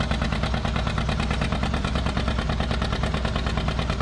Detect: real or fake real